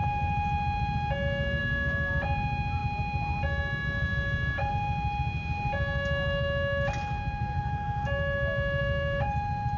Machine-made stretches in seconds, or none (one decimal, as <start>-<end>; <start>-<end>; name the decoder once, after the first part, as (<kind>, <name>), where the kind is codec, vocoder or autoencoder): none